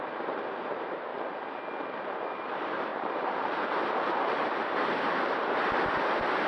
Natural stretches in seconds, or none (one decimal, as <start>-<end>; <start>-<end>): 1.1-1.9